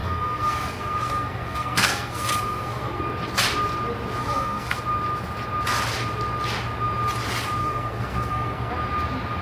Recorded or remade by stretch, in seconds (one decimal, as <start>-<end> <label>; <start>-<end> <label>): 0.0-3.0 remade; 3.0-4.2 recorded; 4.2-4.8 remade; 4.8-7.6 recorded; 7.6-8.7 remade; 8.7-9.4 recorded